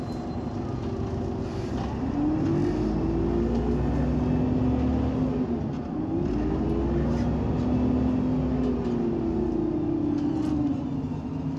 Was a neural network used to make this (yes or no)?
no